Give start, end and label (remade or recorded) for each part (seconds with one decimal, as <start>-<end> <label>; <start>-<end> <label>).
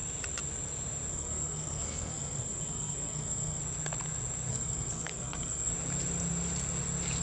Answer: 0.0-1.1 recorded; 1.1-3.6 remade; 3.6-4.5 recorded; 4.5-5.7 remade; 5.7-7.2 recorded